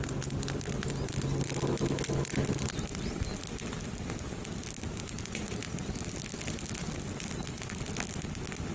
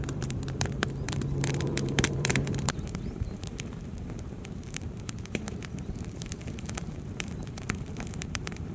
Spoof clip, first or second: second